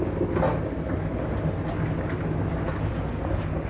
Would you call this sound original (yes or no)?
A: yes